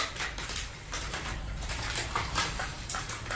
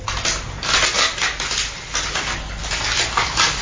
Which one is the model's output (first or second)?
first